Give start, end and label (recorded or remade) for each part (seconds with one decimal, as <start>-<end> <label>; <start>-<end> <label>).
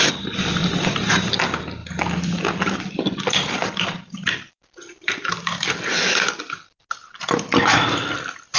0.0-0.6 recorded; 0.6-1.1 remade; 1.1-1.8 recorded; 1.8-6.3 remade; 6.3-7.0 recorded; 7.0-8.6 remade